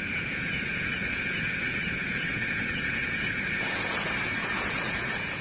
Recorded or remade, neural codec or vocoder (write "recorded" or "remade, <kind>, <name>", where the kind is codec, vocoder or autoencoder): remade, vocoder, Vocos